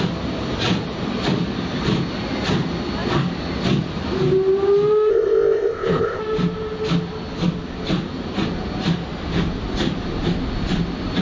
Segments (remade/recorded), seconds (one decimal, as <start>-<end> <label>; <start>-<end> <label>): 0.0-5.1 recorded; 5.1-6.2 remade; 6.2-11.2 recorded